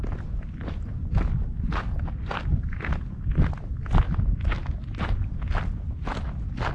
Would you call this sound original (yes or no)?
yes